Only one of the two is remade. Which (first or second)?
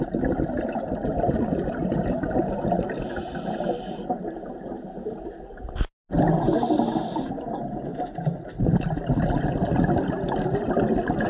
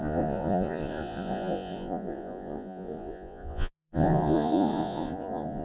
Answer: second